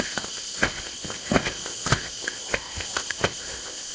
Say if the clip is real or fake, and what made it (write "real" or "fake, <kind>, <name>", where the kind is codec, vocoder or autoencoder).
fake, codec, ZipCodec